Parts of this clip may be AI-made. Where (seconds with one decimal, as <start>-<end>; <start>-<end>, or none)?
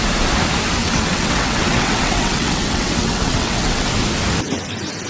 0.8-3.9